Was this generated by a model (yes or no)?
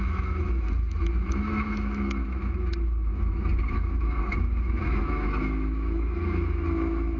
yes